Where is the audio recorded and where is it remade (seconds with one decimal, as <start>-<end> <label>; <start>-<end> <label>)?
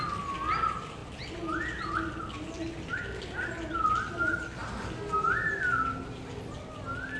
0.0-7.2 recorded